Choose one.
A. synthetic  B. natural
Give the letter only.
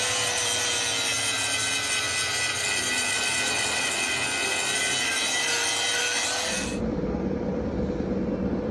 B